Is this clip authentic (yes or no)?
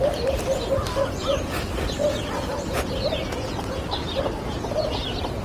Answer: yes